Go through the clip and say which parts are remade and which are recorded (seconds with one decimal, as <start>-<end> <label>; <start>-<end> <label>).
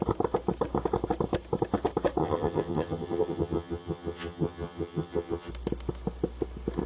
0.0-2.2 recorded; 2.2-5.5 remade; 5.5-6.9 recorded